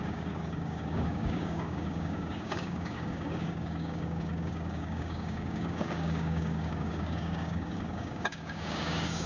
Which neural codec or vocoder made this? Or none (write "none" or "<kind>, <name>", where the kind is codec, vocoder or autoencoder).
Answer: codec, DAC